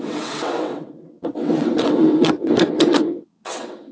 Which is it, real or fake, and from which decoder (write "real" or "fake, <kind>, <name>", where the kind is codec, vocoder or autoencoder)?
fake, vocoder, WaveNeXt